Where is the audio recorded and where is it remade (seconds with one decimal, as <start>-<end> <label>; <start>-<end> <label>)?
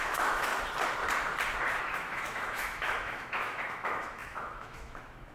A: 0.0-0.5 remade; 0.5-1.8 recorded; 1.8-5.3 remade